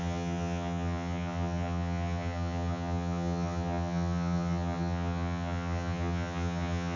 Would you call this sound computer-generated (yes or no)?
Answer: yes